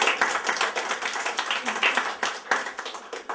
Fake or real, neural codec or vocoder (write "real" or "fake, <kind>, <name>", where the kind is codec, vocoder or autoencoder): real